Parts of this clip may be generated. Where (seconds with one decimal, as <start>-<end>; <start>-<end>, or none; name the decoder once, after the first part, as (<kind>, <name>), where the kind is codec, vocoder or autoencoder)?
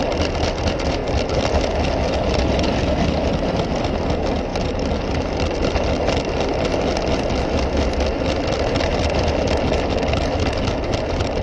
none